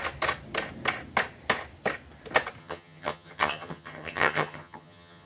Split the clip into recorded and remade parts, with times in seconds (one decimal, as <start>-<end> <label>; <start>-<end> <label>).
0.0-2.6 recorded; 2.6-5.3 remade